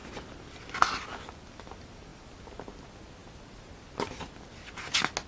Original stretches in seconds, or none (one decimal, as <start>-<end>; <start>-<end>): 0.0-3.2; 4.1-5.3